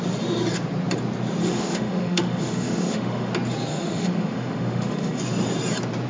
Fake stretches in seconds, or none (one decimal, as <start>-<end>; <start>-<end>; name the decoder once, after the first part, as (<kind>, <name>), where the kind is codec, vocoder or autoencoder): 1.4-3.3 (autoencoder, DAC-VAE); 3.7-5.2